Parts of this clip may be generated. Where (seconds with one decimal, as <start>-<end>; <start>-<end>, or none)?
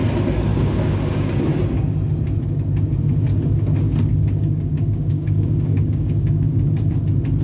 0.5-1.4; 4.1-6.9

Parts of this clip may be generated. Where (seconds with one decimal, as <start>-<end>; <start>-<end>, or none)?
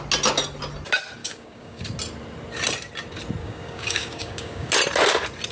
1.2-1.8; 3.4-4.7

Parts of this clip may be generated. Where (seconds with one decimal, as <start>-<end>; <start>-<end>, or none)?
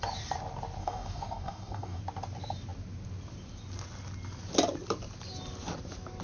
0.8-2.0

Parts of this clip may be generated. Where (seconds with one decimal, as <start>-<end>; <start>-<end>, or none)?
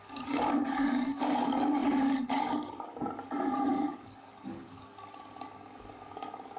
0.0-6.6